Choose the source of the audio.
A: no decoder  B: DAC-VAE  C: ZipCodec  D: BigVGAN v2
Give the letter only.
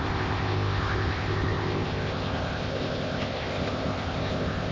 C